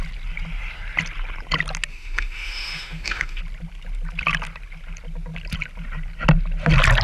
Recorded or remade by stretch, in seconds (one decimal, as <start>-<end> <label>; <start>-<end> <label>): 0.0-1.9 recorded; 1.9-3.4 remade; 3.4-7.0 recorded